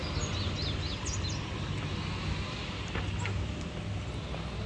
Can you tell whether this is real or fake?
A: real